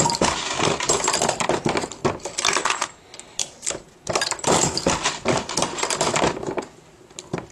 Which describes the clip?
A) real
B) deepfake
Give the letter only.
A